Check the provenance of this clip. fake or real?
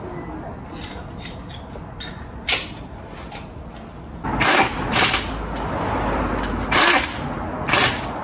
real